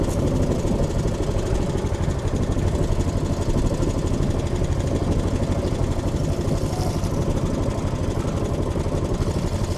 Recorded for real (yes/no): yes